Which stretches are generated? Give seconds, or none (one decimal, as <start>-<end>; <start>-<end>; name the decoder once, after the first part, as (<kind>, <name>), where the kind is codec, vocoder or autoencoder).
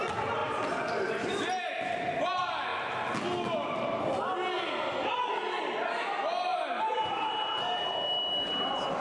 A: 0.4-1.1 (vocoder, BigVGAN v2); 6.5-7.3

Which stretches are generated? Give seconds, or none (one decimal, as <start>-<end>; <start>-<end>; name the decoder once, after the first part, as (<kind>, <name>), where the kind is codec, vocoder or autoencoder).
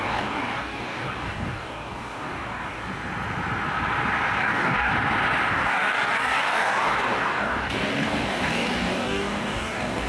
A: 0.0-2.8 (codec, DAC); 4.4-4.9; 5.5-10.1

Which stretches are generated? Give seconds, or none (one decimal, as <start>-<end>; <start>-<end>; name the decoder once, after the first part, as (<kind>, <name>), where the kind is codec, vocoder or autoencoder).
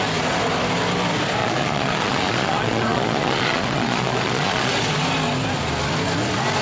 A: 1.4-4.7 (vocoder, Vocos)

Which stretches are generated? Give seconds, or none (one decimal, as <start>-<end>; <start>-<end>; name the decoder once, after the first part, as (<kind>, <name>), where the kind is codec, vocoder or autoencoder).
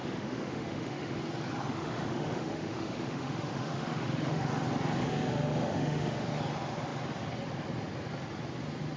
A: 0.0-1.2 (autoencoder, DAC-VAE); 1.7-4.5; 5.0-6.4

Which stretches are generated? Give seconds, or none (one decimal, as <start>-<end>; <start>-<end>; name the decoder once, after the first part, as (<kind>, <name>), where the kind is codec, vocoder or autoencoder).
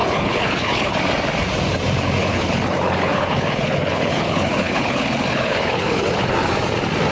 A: 0.0-1.0 (codec, HILCodec); 2.2-6.5